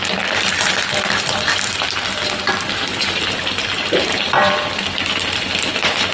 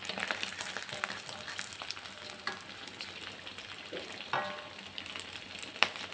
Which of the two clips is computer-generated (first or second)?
first